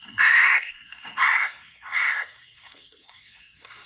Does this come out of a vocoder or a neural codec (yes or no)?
yes